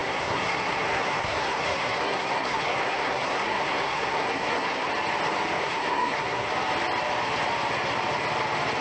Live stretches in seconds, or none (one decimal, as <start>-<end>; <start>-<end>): 4.9-5.6; 6.5-8.8